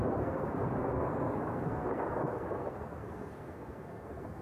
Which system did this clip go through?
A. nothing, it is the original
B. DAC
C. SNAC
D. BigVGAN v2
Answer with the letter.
C